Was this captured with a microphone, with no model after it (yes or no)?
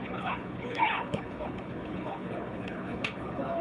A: no